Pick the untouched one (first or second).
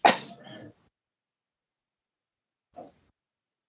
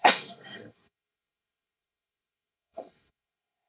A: first